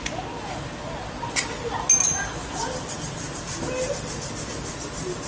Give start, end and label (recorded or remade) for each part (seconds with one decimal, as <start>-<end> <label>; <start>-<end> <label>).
0.0-5.3 recorded